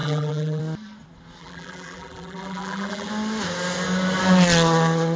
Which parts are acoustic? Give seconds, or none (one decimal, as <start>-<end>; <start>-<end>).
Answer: 0.6-1.4; 3.1-5.2